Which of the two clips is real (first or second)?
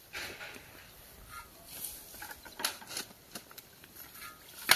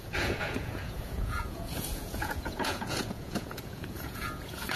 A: first